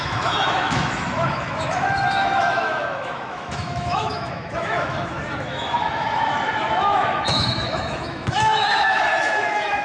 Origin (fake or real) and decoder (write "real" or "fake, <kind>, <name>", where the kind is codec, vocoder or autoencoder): fake, autoencoder, DAC-VAE